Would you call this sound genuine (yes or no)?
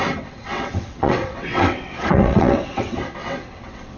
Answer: no